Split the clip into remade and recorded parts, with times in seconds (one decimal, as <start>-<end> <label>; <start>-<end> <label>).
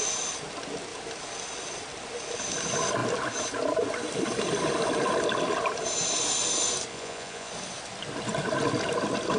0.0-6.9 recorded; 6.9-7.5 remade; 7.5-9.4 recorded